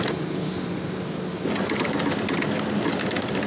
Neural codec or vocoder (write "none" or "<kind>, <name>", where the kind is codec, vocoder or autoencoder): none